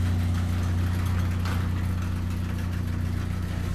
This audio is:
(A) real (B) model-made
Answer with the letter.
A